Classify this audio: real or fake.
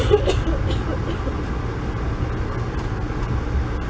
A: real